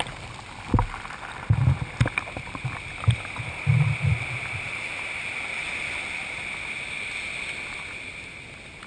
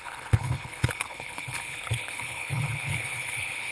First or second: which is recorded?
first